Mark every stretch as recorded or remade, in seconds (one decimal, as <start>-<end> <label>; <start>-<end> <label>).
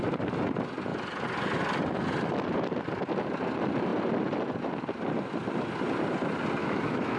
0.0-6.6 recorded; 6.6-7.2 remade